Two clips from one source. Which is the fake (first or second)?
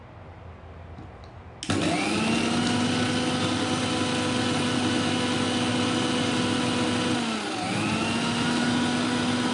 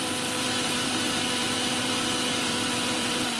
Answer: second